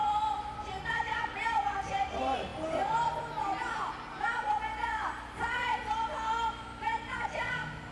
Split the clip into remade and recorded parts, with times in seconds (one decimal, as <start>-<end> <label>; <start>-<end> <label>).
0.0-7.9 recorded